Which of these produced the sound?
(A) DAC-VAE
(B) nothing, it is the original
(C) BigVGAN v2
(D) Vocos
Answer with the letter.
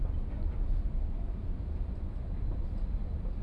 B